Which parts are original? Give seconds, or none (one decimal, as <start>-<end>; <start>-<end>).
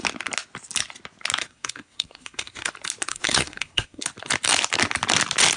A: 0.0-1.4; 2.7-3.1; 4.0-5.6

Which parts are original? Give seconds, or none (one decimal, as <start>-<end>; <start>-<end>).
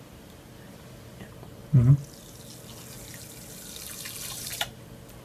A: 1.6-4.2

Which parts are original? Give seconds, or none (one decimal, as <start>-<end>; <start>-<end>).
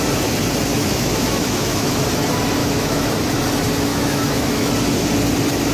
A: 0.0-0.7; 2.0-2.6; 3.1-3.9; 4.7-5.7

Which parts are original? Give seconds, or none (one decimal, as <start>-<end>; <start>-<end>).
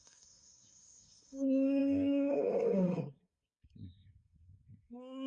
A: none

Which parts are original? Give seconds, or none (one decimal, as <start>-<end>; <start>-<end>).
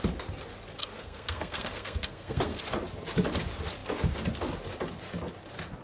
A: 0.0-0.8; 2.6-5.8